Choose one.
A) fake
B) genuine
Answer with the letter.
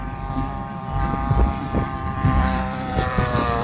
A